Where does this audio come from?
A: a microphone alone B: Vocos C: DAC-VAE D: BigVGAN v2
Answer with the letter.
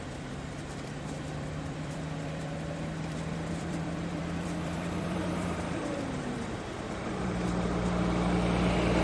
D